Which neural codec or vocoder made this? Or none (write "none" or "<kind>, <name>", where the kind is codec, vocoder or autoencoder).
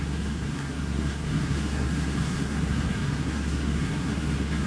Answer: codec, SNAC